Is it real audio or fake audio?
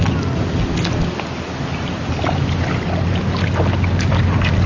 real